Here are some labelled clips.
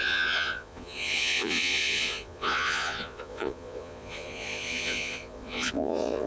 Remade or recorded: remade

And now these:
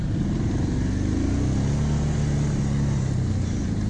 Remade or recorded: recorded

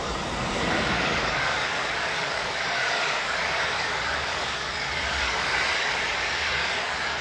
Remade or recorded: remade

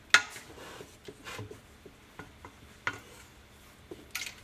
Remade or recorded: recorded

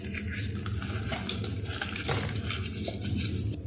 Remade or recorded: remade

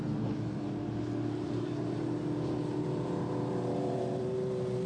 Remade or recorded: recorded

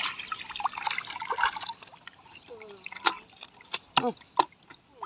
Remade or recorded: recorded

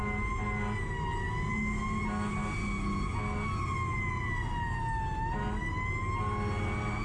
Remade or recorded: recorded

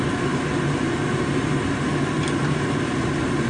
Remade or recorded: recorded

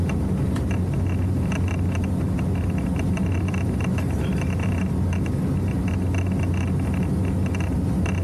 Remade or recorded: recorded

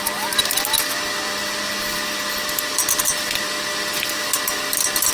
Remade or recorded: recorded